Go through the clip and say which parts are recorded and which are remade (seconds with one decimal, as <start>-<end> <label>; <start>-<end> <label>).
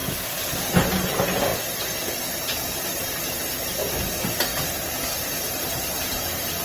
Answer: 0.0-0.6 remade; 0.6-4.5 recorded; 4.5-6.6 remade